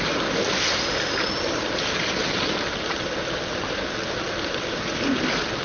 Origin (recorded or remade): recorded